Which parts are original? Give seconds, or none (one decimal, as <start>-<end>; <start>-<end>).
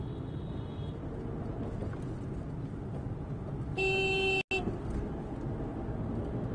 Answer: 0.0-6.5